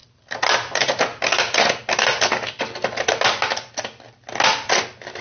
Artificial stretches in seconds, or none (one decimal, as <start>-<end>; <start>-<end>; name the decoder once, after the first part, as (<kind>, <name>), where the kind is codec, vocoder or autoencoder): none